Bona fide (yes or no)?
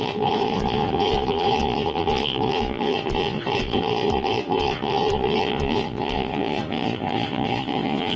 no